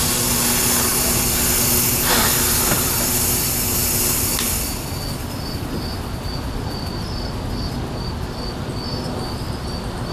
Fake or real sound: real